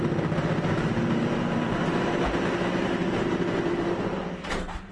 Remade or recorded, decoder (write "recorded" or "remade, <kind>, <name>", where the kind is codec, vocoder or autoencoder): recorded